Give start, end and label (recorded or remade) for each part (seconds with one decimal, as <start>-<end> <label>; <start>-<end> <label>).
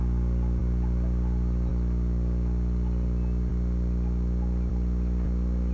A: 0.0-5.7 recorded